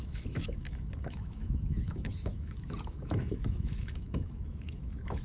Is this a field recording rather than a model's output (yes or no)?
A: no